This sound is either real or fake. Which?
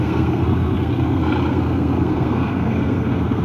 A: fake